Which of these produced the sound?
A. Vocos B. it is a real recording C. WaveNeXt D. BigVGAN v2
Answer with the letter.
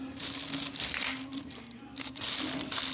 B